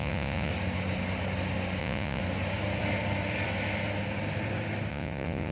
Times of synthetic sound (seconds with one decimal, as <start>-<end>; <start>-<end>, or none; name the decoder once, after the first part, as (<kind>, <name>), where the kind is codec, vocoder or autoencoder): 0.0-0.5 (vocoder, Vocos); 1.8-2.2; 4.9-5.5